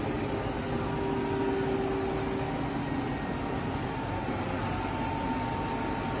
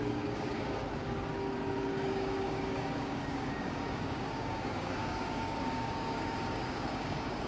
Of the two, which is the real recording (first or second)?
first